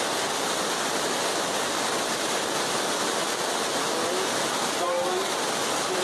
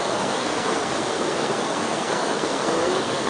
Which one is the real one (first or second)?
first